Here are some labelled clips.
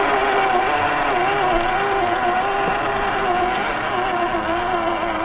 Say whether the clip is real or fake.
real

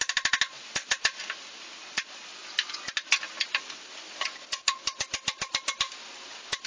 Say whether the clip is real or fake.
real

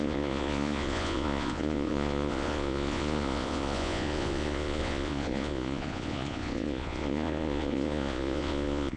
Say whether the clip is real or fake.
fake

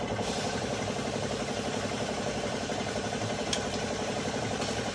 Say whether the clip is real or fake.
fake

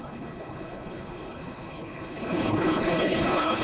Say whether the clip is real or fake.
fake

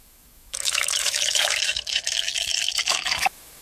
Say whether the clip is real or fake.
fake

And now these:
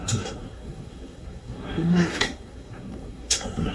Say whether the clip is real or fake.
fake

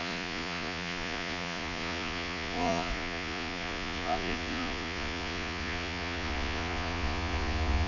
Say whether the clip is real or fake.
fake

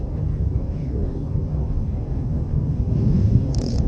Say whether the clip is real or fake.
fake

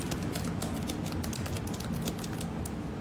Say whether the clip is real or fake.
real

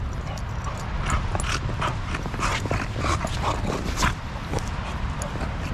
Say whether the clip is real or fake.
real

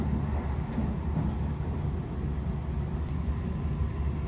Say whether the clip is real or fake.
real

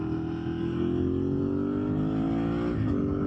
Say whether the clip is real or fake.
real